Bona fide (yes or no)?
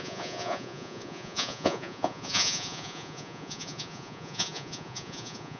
no